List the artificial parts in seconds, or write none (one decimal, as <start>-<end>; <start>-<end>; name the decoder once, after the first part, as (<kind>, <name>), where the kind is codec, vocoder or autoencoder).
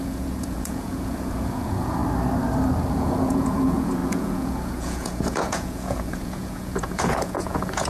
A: 0.0-2.0 (vocoder, Vocos); 2.9-7.9